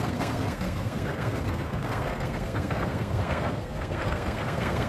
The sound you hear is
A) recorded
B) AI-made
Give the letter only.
B